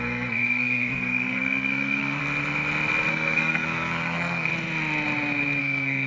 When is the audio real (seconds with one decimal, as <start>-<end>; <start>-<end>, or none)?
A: 2.2-3.1; 4.5-5.6